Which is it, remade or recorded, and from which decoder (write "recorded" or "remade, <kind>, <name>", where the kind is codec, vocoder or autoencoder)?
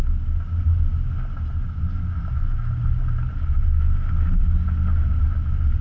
recorded